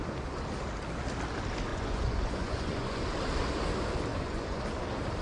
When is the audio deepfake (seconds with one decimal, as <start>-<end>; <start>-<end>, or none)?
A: 1.7-3.0; 4.1-4.6